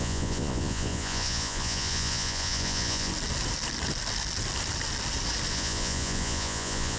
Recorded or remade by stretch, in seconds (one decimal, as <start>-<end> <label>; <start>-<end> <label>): 0.0-3.1 remade; 3.1-5.5 recorded; 5.5-7.0 remade